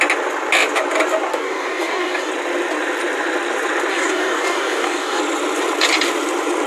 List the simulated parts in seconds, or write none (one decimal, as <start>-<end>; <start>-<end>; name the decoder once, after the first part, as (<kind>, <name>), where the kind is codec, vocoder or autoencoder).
1.3-2.3 (codec, DAC); 3.9-5.2